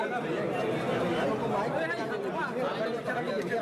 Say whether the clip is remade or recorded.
recorded